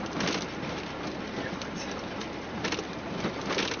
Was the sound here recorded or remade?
recorded